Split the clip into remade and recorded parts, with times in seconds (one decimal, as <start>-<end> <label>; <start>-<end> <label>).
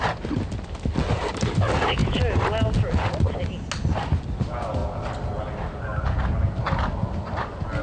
0.0-7.8 recorded